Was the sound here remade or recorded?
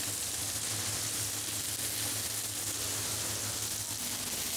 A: recorded